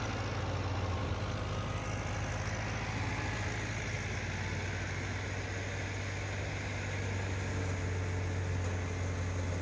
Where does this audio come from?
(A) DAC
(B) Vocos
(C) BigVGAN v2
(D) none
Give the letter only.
D